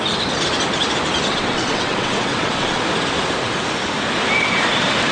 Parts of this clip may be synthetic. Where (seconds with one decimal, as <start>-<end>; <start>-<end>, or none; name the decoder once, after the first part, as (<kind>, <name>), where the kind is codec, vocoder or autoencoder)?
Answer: 1.3-2.8 (vocoder, WaveNeXt)